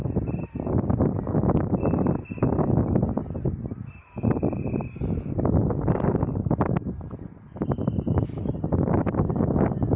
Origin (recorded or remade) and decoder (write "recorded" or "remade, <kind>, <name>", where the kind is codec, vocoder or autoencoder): recorded